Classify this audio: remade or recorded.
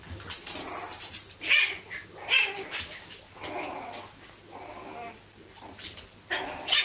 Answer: recorded